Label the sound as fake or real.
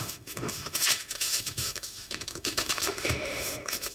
fake